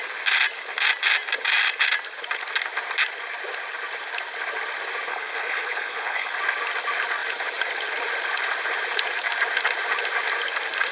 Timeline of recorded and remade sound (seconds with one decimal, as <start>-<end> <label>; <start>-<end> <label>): 0.0-5.1 recorded; 5.1-6.3 remade; 6.3-10.9 recorded